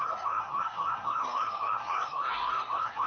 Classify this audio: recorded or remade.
remade